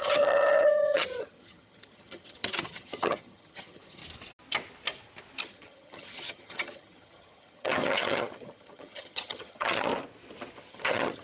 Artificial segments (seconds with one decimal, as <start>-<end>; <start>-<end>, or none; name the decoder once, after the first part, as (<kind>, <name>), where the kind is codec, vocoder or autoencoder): 0.0-4.0 (vocoder, HiFi-GAN); 5.4-9.9; 10.7-11.2